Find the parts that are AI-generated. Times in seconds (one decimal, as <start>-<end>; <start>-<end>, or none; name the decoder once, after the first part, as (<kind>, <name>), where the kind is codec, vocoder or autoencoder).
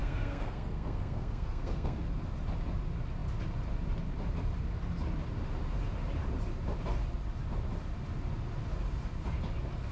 0.0-2.0 (codec, SNAC)